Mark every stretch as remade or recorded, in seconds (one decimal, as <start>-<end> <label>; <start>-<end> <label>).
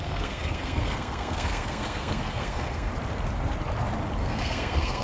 0.0-2.9 remade; 2.9-4.2 recorded; 4.2-5.0 remade